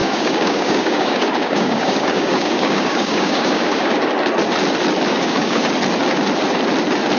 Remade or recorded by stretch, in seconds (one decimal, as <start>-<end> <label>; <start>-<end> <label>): 0.0-4.1 remade; 4.1-5.1 recorded; 5.1-5.7 remade; 5.7-7.2 recorded

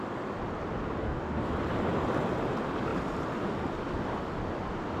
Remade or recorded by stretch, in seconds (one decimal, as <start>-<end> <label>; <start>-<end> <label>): 0.0-1.0 recorded; 1.0-1.5 remade; 1.5-5.0 recorded

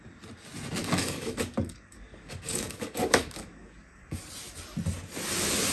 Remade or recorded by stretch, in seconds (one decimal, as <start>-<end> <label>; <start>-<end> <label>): 0.0-0.8 recorded; 0.8-4.2 remade; 4.2-5.7 recorded